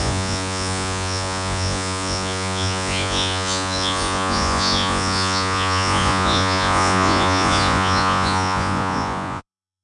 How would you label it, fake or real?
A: fake